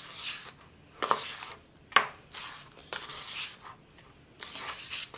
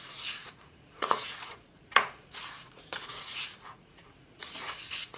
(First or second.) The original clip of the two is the first